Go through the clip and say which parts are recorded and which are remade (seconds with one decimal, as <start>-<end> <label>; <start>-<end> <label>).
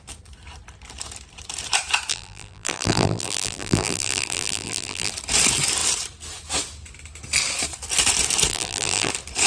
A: 0.0-2.1 recorded; 2.1-5.1 remade; 5.1-8.5 recorded; 8.5-9.1 remade; 9.1-9.5 recorded